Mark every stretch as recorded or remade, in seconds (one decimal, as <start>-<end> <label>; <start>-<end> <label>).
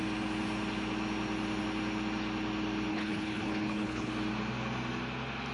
0.0-2.9 recorded; 2.9-4.1 remade; 4.1-5.5 recorded